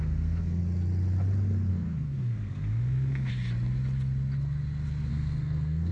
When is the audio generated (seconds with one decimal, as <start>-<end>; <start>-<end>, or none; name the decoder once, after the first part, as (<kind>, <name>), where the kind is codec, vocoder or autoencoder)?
0.0-0.6 (codec, SNAC); 1.7-3.3; 5.1-5.9